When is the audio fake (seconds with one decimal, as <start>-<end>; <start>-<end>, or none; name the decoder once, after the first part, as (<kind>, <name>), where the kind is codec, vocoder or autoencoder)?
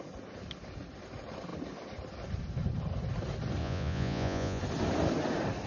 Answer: 3.6-4.6 (vocoder, Vocos)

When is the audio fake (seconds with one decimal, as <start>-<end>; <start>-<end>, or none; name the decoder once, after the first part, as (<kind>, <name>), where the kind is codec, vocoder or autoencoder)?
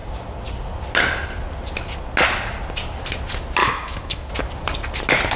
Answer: 3.6-4.3 (autoencoder, DAC-VAE)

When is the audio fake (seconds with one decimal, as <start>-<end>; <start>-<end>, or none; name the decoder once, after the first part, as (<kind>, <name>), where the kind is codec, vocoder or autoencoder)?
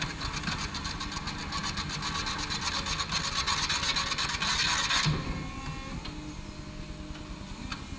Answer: none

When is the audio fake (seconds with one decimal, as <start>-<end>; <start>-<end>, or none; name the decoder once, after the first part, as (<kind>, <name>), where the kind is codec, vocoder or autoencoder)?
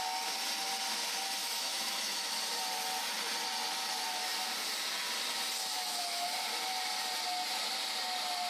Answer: 1.4-2.4 (autoencoder, DAC-VAE); 5.7-6.3